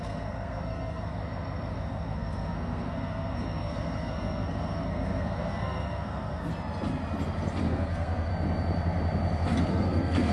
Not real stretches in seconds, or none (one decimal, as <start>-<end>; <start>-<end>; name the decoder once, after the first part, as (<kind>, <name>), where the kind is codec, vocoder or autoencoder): 0.0-1.2 (codec, SNAC); 1.7-6.5; 7.6-8.3; 9.7-10.3